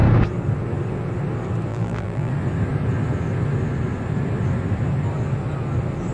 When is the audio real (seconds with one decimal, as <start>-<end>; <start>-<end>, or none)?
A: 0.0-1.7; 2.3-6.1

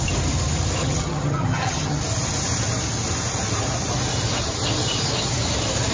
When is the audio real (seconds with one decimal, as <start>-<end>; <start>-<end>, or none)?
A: 0.0-0.8; 2.0-5.9

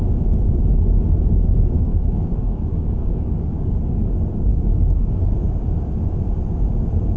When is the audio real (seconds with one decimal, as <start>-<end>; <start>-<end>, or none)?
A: 0.0-1.9; 4.1-4.5; 5.3-7.2

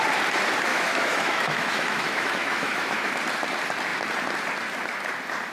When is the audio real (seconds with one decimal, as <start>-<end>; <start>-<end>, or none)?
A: 0.0-0.7; 3.1-5.5

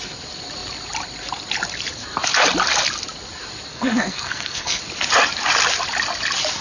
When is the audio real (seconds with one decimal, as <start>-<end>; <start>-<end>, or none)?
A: 0.0-3.7; 4.8-6.6

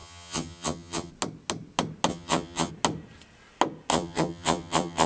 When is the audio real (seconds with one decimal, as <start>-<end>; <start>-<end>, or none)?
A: 1.1-2.1; 2.7-3.9